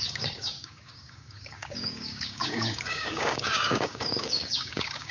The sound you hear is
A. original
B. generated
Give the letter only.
B